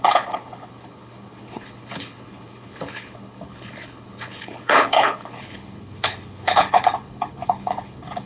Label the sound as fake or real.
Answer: fake